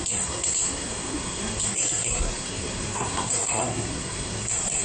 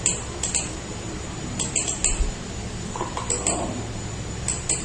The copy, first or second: first